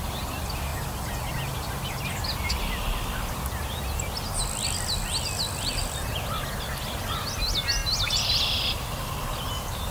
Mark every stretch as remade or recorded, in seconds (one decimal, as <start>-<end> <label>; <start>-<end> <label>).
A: 0.0-9.9 recorded